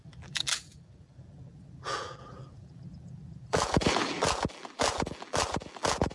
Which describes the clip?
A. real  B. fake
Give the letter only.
B